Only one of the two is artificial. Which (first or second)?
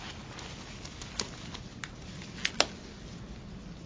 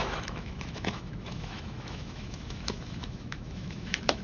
second